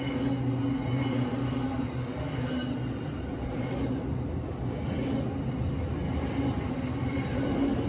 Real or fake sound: real